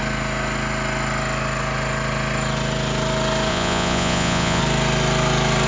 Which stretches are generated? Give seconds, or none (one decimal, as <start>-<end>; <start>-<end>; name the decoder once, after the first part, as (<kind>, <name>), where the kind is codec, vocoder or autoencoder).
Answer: 3.5-4.6 (vocoder, Vocos)